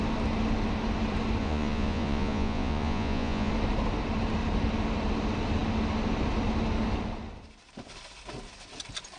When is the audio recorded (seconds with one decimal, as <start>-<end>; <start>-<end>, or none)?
0.0-1.4; 3.5-9.2